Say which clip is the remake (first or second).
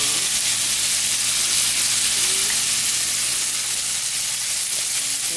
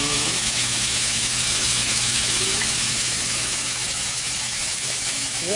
second